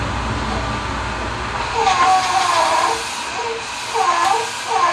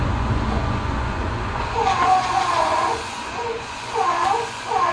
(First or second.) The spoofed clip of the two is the second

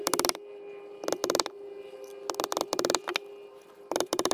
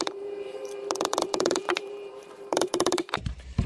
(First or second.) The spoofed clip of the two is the second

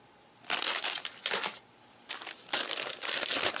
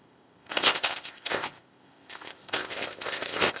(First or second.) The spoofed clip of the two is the second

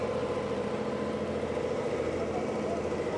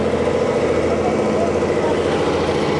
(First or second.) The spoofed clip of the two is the first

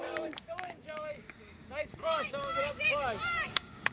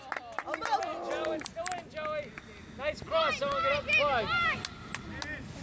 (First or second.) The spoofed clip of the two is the first